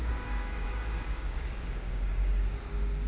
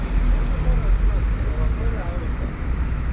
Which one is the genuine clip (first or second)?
second